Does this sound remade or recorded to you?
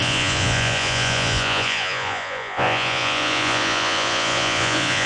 remade